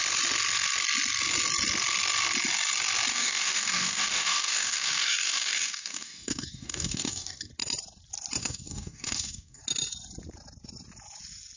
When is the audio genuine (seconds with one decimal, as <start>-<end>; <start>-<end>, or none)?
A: 0.0-3.1; 7.5-8.4; 9.6-11.6